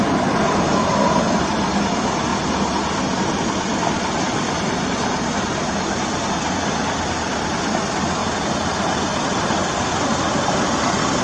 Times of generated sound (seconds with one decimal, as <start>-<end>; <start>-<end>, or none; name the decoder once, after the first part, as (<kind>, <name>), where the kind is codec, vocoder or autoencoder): 8.2-9.6 (vocoder, BigVGAN v2)